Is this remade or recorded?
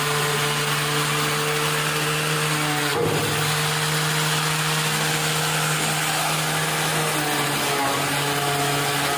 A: recorded